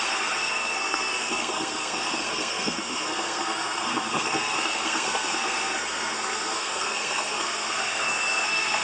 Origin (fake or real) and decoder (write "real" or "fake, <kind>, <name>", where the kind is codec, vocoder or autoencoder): fake, codec, SNAC